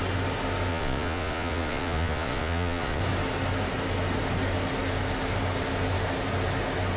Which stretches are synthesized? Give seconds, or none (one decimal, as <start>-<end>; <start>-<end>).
0.7-3.0